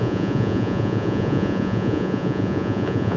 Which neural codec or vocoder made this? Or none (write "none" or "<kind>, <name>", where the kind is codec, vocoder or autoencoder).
vocoder, Vocos